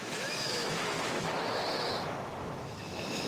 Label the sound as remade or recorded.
remade